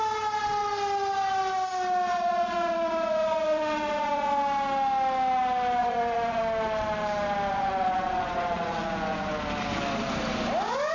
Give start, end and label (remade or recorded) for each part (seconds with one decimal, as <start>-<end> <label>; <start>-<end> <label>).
0.0-2.1 recorded; 2.1-4.4 remade; 4.4-5.8 recorded; 5.8-6.4 remade; 6.4-7.5 recorded; 7.5-9.3 remade; 9.3-10.9 recorded